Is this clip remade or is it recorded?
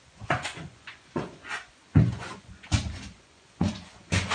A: remade